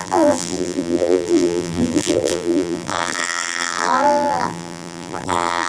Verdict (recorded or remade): remade